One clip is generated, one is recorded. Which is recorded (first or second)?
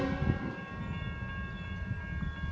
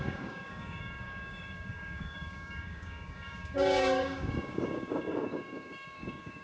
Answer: first